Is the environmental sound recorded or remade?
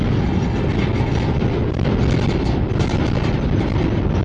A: recorded